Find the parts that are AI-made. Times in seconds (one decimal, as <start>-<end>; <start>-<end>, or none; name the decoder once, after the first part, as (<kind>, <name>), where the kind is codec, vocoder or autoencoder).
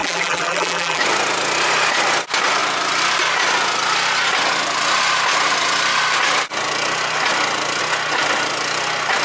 0.0-1.0 (vocoder, BigVGAN v2)